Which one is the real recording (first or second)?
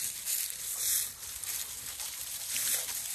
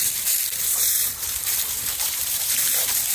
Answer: first